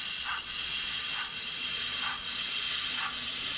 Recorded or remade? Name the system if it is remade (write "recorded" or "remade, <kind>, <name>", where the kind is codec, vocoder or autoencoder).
remade, vocoder, Vocos